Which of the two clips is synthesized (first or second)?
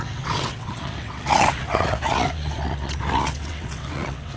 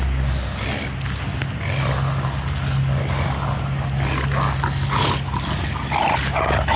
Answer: first